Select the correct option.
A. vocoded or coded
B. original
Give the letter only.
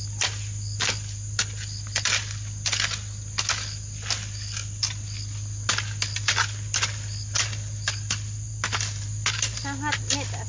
B